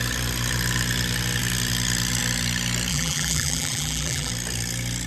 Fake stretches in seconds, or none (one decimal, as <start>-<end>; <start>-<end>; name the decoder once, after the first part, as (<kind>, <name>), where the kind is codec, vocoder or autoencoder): 2.9-4.3 (vocoder, BigVGAN v2)